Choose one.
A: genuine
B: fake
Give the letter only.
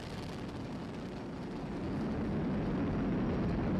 A